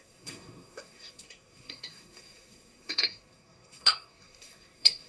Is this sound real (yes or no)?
no